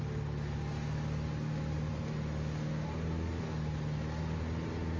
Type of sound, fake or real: real